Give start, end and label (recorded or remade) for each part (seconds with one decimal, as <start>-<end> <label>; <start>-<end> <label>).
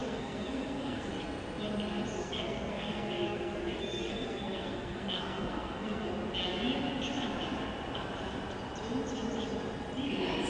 0.0-1.1 remade; 1.1-2.2 recorded; 2.2-6.1 remade; 6.1-10.5 recorded